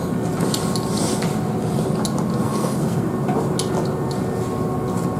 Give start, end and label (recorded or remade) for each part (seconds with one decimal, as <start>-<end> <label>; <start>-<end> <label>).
0.0-2.4 recorded; 2.4-3.1 remade; 3.1-5.2 recorded